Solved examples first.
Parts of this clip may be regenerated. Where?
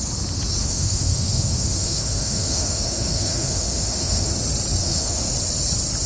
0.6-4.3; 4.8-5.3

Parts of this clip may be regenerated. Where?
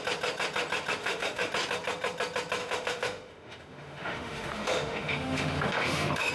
1.0-1.5; 2.6-6.3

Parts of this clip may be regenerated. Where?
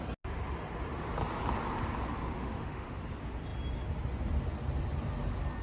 2.3-3.0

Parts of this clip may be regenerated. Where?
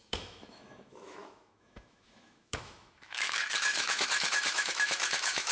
0.0-5.5